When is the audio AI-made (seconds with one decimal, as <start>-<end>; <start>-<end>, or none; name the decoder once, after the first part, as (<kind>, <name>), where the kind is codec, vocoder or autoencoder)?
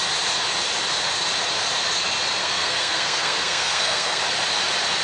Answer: 2.4-4.2 (codec, SNAC)